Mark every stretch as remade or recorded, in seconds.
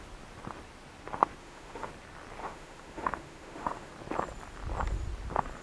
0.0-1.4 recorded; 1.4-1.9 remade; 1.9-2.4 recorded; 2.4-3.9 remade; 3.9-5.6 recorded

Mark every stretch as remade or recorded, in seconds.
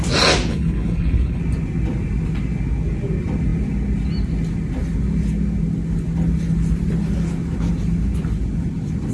0.0-0.5 recorded; 0.5-1.4 remade; 1.4-9.1 recorded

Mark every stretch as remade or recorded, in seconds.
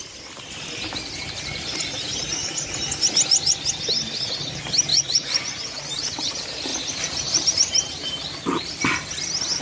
0.0-4.9 recorded; 4.9-5.8 remade; 5.8-9.6 recorded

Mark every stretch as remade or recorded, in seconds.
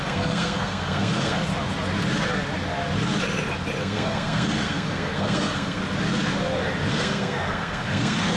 0.0-1.5 remade; 1.5-3.8 recorded; 3.8-5.8 remade; 5.8-6.9 recorded; 6.9-8.4 remade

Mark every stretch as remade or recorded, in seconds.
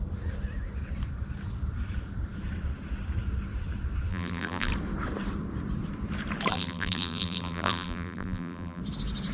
0.0-4.1 recorded; 4.1-4.7 remade; 4.7-6.5 recorded; 6.5-8.8 remade; 8.8-9.3 recorded